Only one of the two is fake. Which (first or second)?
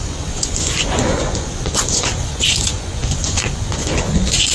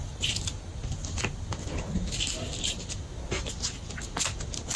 first